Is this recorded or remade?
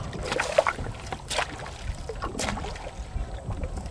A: recorded